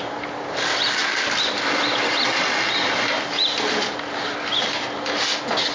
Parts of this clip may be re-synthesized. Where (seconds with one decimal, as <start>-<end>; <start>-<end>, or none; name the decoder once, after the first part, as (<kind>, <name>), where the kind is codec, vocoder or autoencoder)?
none

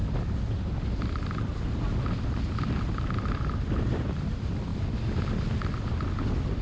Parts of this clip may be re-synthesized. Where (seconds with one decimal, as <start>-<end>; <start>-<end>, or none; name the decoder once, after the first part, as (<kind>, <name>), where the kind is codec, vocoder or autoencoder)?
none

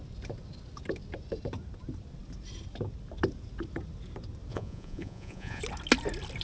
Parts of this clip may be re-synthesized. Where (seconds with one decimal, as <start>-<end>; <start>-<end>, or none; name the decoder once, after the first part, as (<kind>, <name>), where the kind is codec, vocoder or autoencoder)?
4.5-5.6 (vocoder, Vocos)

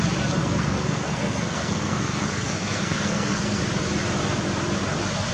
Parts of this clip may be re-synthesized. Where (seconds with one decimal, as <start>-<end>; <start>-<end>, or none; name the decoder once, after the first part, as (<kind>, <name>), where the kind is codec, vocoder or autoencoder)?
0.4-3.6 (codec, SNAC)

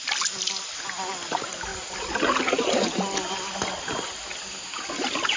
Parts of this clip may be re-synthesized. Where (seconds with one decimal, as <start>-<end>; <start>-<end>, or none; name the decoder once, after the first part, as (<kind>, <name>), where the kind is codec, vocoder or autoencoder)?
none

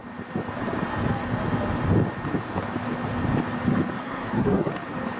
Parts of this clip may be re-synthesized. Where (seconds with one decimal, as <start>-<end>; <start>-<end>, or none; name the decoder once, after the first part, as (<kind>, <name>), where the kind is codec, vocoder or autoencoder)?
4.0-4.7 (codec, SNAC)